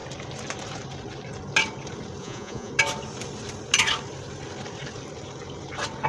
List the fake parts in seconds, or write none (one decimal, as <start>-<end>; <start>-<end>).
2.2-2.7